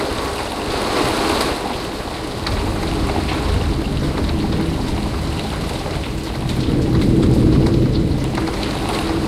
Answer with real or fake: real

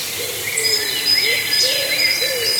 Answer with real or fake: fake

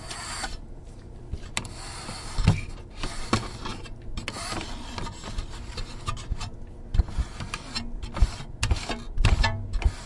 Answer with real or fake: real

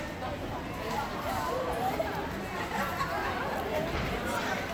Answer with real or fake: real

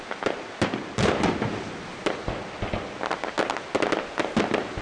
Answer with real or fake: real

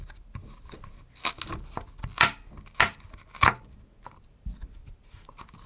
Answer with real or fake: real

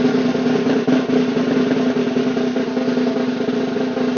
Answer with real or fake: real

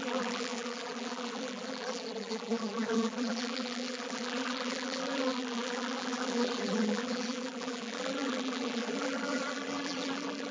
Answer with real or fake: fake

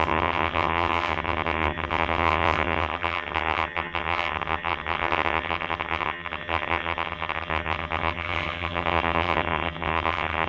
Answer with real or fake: fake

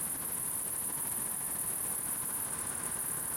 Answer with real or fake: real